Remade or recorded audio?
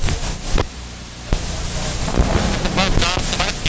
recorded